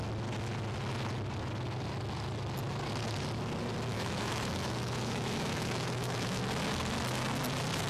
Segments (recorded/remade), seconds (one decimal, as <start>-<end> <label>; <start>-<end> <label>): 0.0-3.9 recorded; 3.9-6.4 remade; 6.4-7.9 recorded